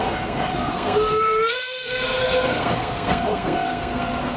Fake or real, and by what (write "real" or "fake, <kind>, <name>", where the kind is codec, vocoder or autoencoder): fake, codec, SNAC